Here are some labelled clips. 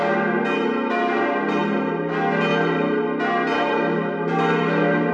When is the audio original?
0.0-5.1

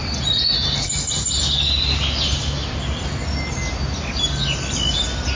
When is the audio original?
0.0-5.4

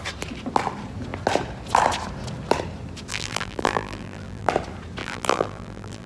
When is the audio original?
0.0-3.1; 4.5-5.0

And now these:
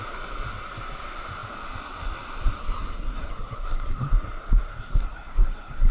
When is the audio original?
0.0-2.6; 4.1-4.7

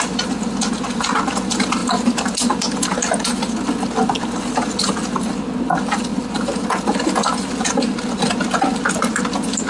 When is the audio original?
0.0-9.7